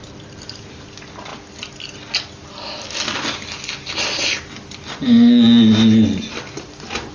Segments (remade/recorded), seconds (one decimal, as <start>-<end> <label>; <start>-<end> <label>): 0.0-7.1 recorded